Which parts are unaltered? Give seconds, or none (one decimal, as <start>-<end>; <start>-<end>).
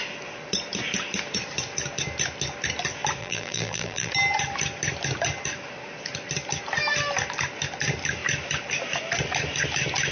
0.0-3.2; 4.1-10.1